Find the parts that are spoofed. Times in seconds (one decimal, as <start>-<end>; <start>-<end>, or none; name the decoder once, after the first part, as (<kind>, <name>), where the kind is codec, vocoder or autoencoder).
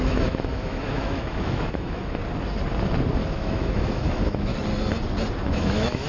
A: 0.0-2.2 (autoencoder, DAC-VAE); 3.4-4.5; 5.4-6.1